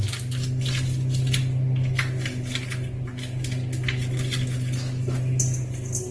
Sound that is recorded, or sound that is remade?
recorded